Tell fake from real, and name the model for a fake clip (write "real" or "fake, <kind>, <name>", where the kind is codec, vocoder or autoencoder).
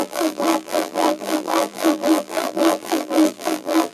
fake, vocoder, BigVGAN v2